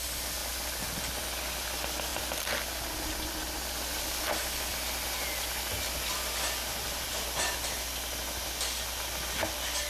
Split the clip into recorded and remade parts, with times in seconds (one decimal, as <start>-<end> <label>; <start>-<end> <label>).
0.0-4.7 recorded; 4.7-7.1 remade; 7.1-9.9 recorded